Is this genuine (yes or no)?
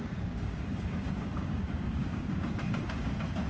no